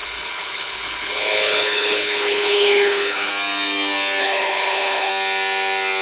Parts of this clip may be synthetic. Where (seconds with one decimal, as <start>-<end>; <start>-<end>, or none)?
0.0-3.3; 4.2-5.1